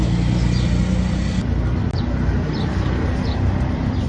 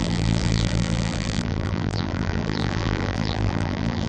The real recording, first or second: first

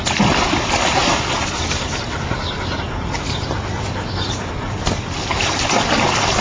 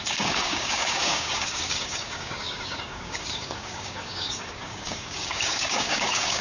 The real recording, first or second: first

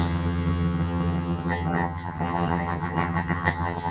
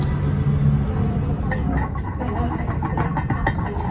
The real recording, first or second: second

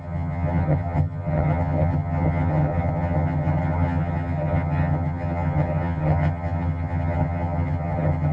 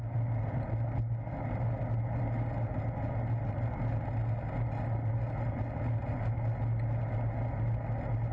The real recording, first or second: second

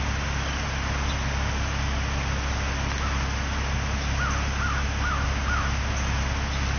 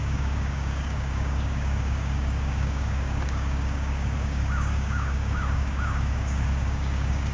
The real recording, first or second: first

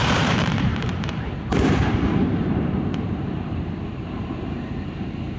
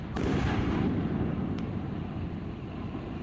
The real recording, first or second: second